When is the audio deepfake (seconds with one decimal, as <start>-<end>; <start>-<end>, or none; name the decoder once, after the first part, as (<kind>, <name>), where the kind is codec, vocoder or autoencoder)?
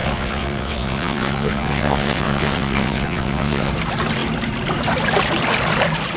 0.0-3.7 (vocoder, WaveNeXt)